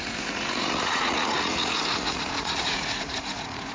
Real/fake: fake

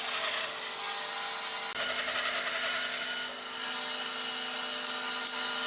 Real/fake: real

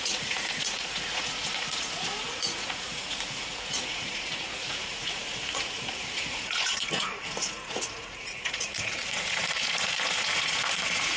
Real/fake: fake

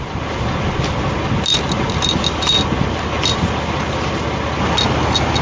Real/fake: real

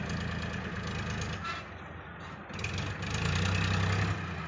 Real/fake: real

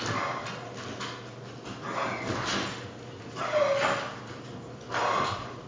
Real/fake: real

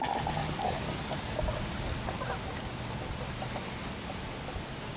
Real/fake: real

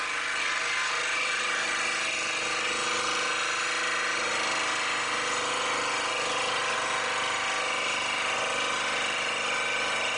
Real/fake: real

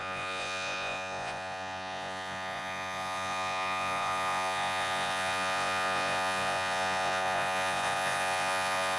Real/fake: fake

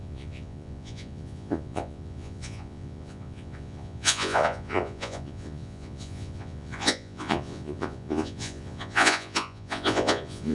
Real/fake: fake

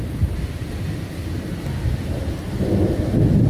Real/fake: real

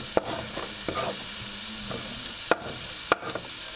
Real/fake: real